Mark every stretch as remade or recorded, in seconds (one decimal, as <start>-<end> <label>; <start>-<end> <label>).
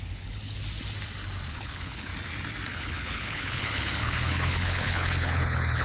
0.0-0.6 remade; 0.6-1.5 recorded; 1.5-2.1 remade; 2.1-2.7 recorded; 2.7-5.8 remade